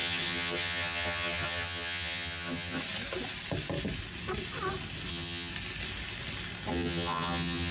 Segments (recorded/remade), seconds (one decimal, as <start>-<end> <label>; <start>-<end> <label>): 0.0-2.8 remade; 2.8-5.1 recorded; 5.1-5.5 remade; 5.5-6.7 recorded; 6.7-7.7 remade